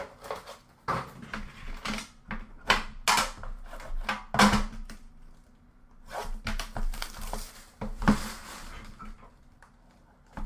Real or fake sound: real